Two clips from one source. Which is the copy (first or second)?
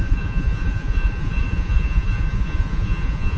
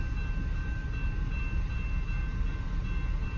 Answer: first